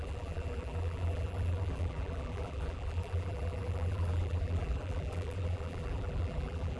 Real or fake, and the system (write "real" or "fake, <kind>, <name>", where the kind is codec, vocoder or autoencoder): fake, vocoder, BigVGAN v2